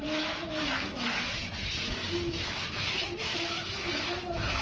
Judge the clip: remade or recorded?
remade